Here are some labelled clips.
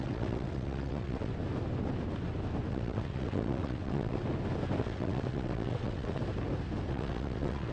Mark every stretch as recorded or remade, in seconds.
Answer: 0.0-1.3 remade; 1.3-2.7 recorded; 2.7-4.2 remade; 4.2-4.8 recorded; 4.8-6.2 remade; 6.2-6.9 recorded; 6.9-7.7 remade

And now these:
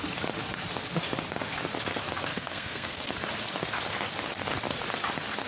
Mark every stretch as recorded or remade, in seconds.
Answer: 0.0-2.3 recorded; 2.3-3.0 remade; 3.0-5.5 recorded